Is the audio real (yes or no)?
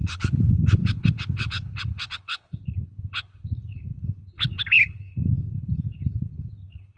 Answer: no